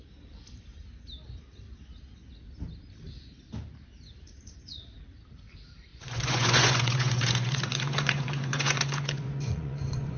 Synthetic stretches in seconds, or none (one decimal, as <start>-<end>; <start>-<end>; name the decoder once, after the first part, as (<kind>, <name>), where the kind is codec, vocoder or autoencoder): 5.9-10.2 (vocoder, Vocos)